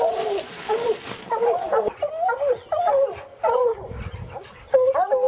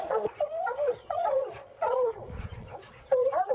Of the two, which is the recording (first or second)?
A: first